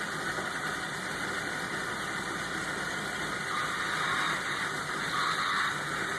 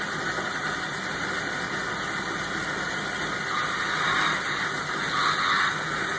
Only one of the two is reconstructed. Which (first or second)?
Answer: first